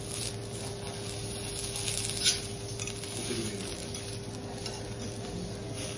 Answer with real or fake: real